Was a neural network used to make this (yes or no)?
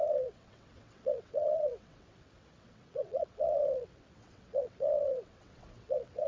yes